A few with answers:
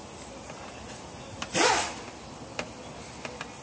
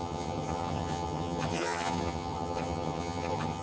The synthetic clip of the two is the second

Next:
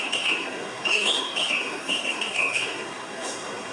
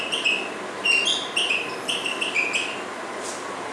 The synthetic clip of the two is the first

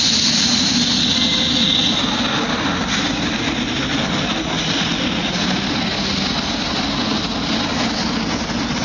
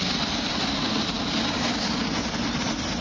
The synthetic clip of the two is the second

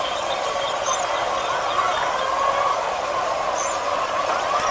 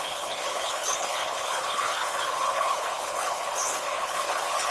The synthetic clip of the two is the second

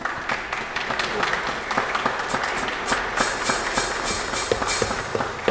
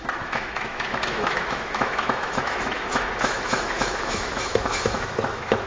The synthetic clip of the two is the second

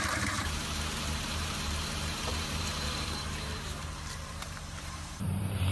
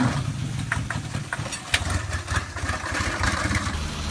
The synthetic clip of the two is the first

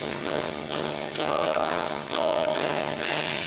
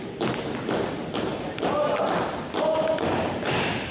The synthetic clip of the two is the first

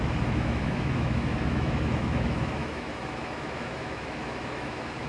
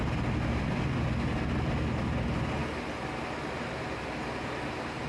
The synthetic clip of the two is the first